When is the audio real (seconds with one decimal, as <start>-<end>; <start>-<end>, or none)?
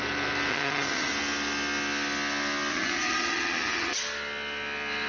0.0-0.5; 1.1-2.7; 3.9-5.1